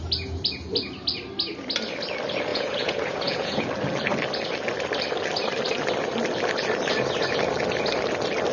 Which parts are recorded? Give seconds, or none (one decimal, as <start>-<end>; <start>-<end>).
0.0-2.5; 3.7-8.5